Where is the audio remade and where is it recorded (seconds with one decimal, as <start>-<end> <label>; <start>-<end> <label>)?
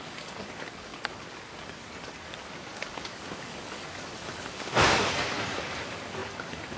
0.0-6.8 remade